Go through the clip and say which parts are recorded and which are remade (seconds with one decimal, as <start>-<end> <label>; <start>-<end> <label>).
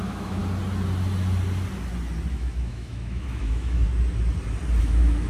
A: 0.0-0.4 remade; 0.4-2.3 recorded; 2.3-3.8 remade; 3.8-4.8 recorded; 4.8-5.3 remade